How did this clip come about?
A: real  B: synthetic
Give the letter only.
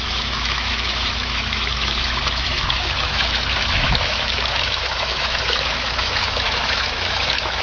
B